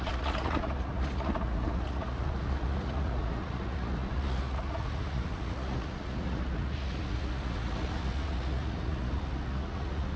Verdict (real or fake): fake